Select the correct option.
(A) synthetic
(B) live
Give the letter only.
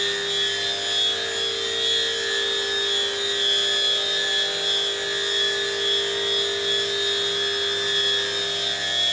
B